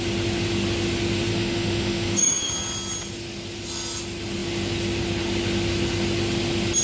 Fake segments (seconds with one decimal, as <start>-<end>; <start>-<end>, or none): 1.3-2.5